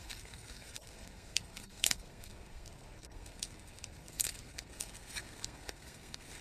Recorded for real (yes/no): no